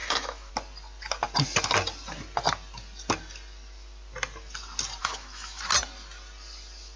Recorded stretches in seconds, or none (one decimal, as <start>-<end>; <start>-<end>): 0.5-5.0; 5.6-7.0